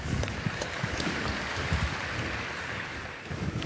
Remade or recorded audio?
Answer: remade